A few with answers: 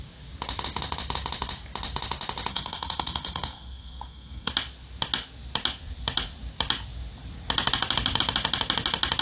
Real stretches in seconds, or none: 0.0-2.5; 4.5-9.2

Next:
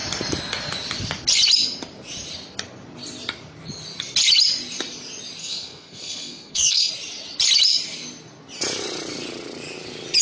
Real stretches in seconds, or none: 0.0-5.4; 6.9-10.2

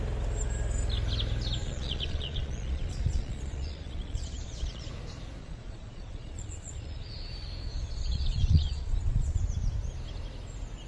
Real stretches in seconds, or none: 0.0-1.6; 4.9-5.4; 7.3-7.7; 9.4-10.9